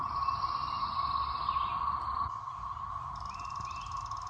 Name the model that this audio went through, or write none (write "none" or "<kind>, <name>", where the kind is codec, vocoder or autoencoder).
none